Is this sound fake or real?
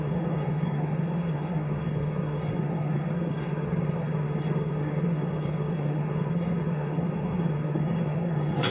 fake